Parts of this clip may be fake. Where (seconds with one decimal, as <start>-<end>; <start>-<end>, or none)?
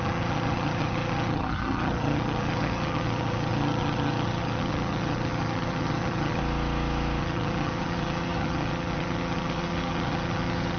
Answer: 0.0-6.4; 7.2-10.8